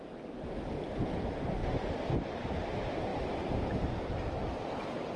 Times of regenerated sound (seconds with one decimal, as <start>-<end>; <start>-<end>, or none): none